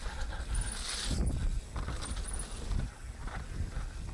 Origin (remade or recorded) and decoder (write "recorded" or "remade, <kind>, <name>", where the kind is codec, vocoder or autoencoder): recorded